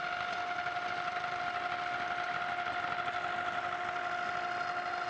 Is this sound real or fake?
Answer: real